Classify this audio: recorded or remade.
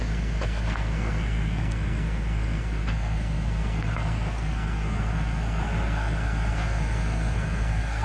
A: remade